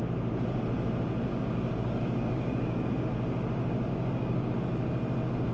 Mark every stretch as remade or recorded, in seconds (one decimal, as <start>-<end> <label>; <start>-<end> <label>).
0.0-1.3 recorded; 1.3-2.9 remade; 2.9-3.9 recorded; 3.9-4.5 remade; 4.5-5.5 recorded